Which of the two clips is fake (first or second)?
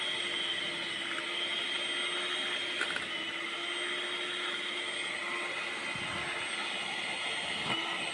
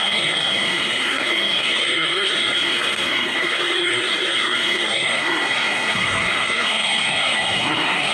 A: second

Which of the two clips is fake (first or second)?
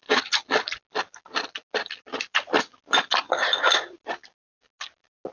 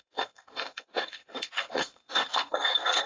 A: second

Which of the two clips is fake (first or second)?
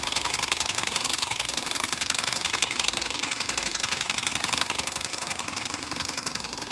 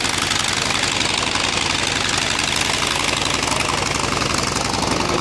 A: first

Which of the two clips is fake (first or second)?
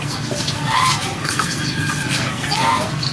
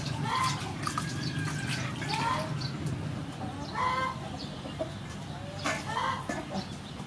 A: first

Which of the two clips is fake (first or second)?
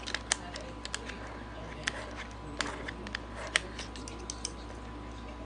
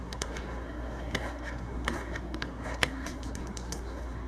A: second